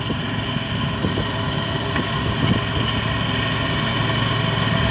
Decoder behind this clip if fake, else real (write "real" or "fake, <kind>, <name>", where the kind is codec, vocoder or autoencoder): real